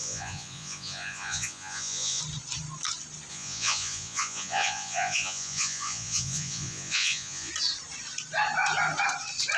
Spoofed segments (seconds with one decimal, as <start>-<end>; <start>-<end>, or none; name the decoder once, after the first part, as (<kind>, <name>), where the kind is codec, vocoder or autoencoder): 0.0-2.2 (vocoder, Vocos); 3.3-7.5